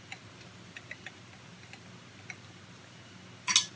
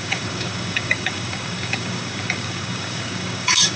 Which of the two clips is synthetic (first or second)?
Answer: second